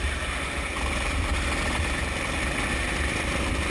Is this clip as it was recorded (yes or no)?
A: yes